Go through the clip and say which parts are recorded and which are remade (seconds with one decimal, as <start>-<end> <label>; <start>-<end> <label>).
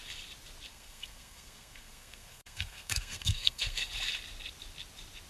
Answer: 0.0-0.7 recorded; 0.7-3.9 remade; 3.9-5.3 recorded